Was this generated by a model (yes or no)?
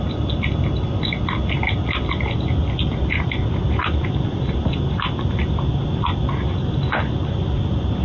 no